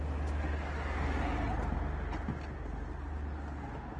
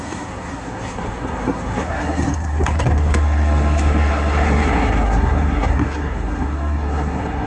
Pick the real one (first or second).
first